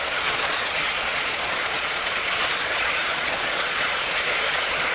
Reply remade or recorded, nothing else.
remade